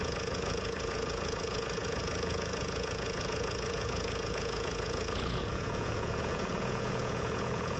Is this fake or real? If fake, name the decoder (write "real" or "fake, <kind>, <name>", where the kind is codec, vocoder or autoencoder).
fake, vocoder, Vocos